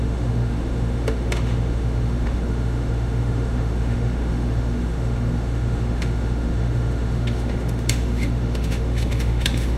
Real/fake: fake